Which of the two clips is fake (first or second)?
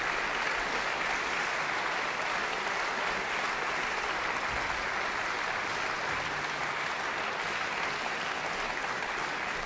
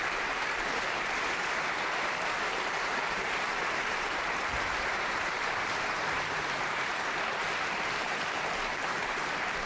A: second